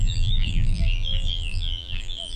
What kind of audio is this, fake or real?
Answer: fake